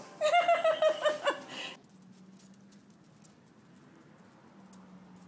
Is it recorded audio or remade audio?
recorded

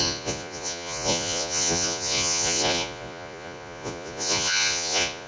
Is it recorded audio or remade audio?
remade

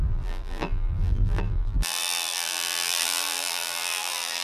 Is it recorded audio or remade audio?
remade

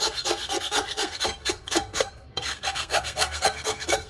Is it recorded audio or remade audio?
remade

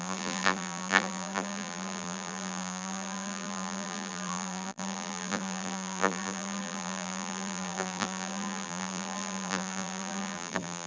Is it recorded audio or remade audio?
remade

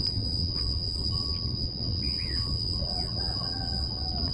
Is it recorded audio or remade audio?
remade